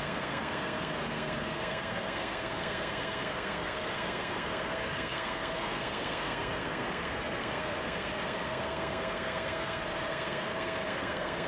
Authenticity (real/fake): fake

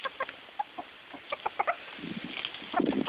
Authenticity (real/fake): real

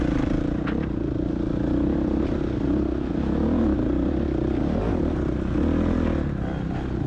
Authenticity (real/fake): real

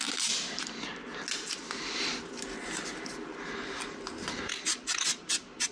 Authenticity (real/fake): real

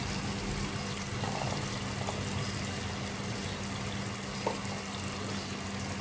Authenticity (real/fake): real